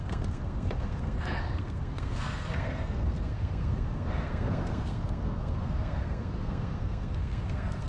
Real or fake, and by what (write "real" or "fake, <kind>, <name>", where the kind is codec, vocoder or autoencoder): fake, codec, SNAC